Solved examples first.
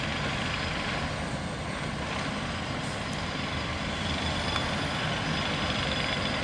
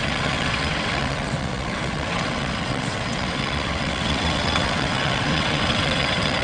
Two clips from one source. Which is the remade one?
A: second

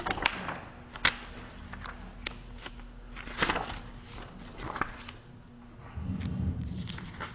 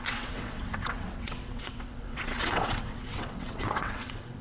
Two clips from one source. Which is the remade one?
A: second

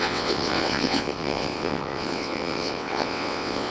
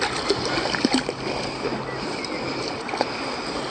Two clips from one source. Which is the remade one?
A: first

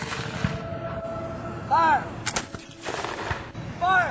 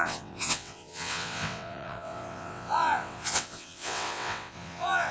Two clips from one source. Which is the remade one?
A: second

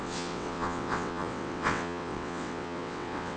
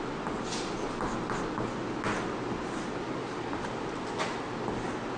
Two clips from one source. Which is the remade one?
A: first